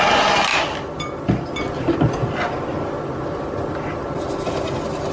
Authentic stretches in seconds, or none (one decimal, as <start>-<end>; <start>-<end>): 0.0-5.1